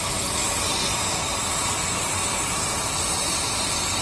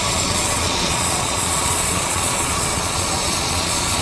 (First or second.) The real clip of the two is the first